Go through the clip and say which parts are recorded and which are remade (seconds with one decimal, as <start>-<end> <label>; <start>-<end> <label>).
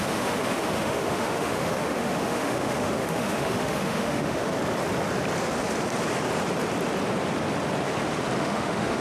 0.0-4.5 remade; 4.5-8.4 recorded; 8.4-9.0 remade